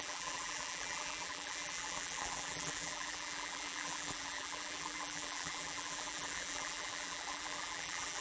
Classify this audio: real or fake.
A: fake